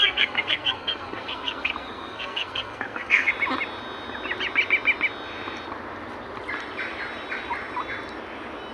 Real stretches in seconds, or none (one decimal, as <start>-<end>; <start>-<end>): 3.3-8.7